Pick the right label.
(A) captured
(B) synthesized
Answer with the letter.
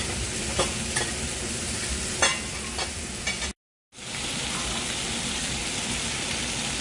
A